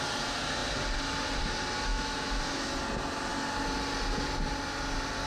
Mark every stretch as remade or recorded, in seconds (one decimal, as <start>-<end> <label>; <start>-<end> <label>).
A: 0.0-1.9 recorded; 1.9-2.7 remade; 2.7-5.3 recorded